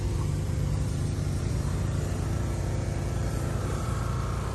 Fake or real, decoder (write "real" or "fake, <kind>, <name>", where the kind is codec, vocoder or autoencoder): fake, vocoder, BigVGAN v2